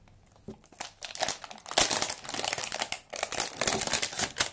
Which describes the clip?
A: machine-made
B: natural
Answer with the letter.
B